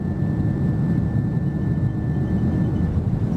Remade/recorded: recorded